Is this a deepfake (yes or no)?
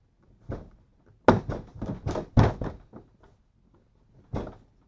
no